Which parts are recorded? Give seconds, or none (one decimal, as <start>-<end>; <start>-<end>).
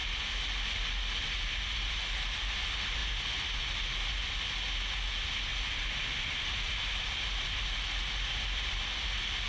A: 0.0-9.5